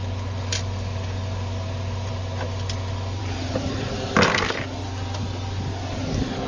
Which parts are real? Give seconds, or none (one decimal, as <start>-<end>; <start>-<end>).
0.0-3.2; 4.1-6.5